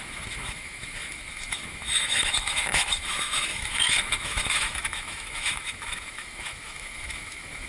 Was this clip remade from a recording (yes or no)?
yes